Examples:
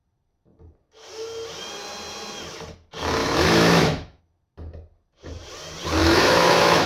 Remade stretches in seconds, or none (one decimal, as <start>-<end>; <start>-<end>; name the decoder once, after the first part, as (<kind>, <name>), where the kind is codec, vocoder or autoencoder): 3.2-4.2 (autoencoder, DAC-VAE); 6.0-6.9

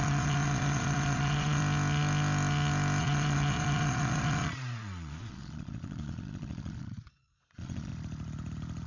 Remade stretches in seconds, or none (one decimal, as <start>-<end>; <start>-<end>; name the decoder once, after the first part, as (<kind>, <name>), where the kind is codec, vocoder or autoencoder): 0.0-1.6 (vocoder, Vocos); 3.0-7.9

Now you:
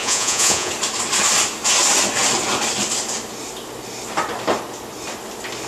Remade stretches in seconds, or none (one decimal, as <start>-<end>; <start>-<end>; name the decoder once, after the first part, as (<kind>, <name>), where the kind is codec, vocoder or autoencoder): 0.0-0.7 (vocoder, Vocos)

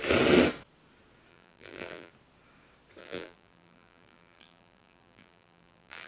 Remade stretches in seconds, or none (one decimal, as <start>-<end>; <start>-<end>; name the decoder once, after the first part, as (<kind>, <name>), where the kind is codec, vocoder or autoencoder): 1.3-2.1 (vocoder, BigVGAN v2); 3.0-6.1